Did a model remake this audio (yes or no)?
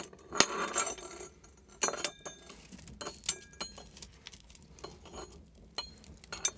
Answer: no